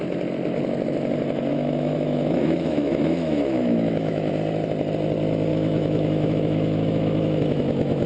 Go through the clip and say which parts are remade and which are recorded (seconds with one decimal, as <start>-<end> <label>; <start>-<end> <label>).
0.0-1.5 recorded; 1.5-4.3 remade; 4.3-5.5 recorded; 5.5-8.1 remade